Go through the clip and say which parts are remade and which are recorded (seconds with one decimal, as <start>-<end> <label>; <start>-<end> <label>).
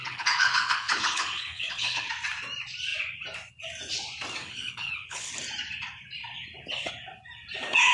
0.0-2.1 remade; 2.1-4.4 recorded; 4.4-5.3 remade; 5.3-7.9 recorded